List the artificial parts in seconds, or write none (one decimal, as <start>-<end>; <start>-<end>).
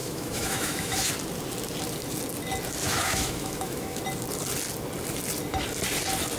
0.0-1.1; 2.8-4.0